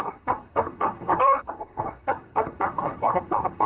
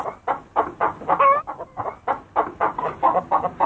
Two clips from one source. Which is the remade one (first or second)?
first